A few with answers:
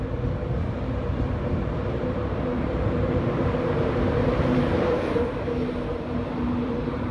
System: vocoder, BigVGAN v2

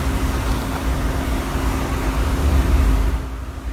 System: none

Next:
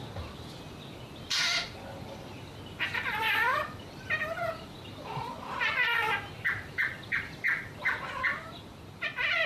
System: vocoder, BigVGAN v2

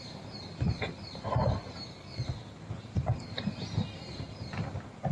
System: vocoder, BigVGAN v2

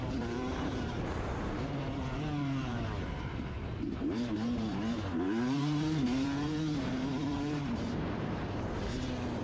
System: vocoder, BigVGAN v2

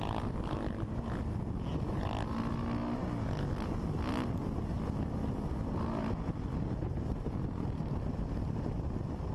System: none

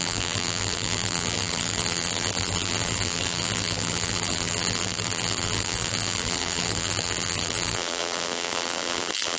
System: vocoder, BigVGAN v2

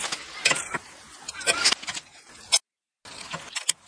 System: none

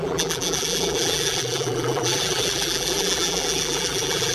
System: vocoder, BigVGAN v2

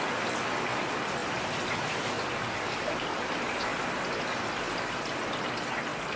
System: none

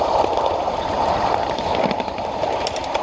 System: vocoder, BigVGAN v2